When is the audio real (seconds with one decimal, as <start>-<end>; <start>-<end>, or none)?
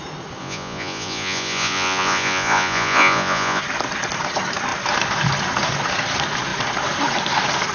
0.0-0.4; 3.6-7.7